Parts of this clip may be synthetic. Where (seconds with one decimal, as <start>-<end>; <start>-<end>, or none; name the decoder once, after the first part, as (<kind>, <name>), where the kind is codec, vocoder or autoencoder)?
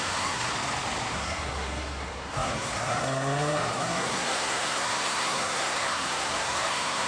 0.0-0.5 (codec, SNAC); 1.1-7.1